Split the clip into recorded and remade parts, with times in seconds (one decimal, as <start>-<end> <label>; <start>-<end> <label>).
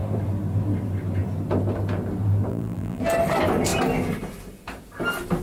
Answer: 0.0-2.5 recorded; 2.5-3.0 remade; 3.0-5.4 recorded